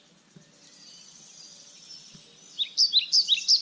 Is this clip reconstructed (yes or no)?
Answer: no